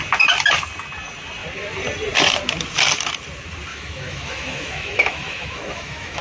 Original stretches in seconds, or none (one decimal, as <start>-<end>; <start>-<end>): 0.0-3.7